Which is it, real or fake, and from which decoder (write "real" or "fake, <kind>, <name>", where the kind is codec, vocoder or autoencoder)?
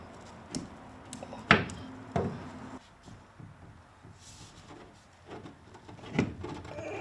real